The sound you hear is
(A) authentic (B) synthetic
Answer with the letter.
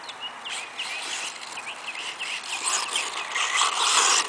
A